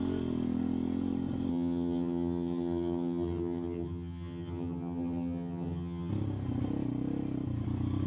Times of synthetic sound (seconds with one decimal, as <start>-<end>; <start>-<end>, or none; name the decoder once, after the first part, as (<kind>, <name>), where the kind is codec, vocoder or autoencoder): 1.5-6.1 (vocoder, HiFi-GAN)